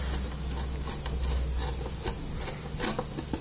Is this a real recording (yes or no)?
yes